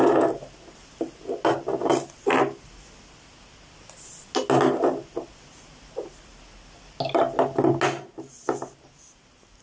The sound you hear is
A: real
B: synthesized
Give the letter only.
A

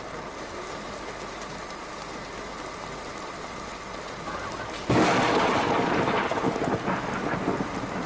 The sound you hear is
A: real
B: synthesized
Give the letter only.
A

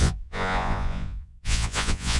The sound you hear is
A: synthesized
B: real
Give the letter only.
A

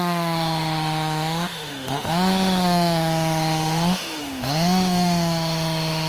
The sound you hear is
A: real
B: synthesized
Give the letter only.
B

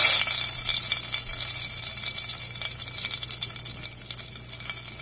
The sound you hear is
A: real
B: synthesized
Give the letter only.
A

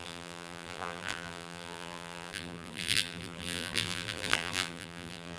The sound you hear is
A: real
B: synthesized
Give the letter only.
B